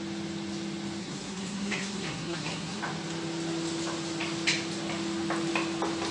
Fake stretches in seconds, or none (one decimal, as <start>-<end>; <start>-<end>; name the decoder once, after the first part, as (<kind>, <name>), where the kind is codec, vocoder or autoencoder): 1.0-2.8 (codec, SNAC)